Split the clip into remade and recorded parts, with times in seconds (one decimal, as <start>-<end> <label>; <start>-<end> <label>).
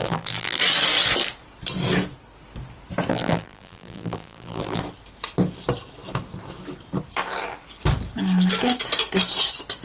0.0-0.6 remade; 0.6-3.1 recorded; 3.1-4.8 remade; 4.8-9.8 recorded